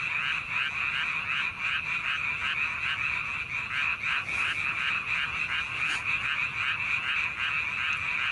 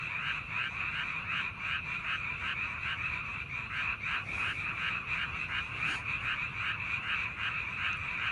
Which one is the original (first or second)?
first